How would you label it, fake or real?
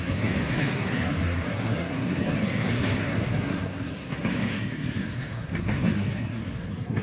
fake